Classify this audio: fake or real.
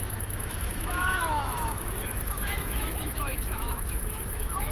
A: fake